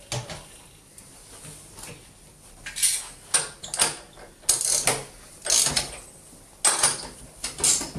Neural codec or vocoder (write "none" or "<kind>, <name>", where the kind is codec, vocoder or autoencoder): none